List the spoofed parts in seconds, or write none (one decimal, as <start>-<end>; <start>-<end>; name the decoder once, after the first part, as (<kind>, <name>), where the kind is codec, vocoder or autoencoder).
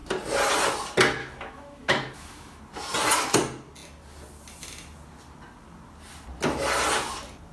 1.2-2.6 (autoencoder, DAC-VAE)